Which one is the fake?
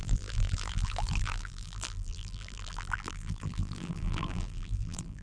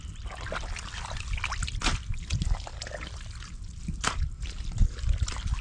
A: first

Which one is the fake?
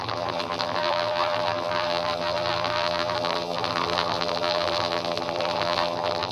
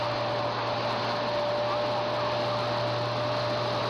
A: first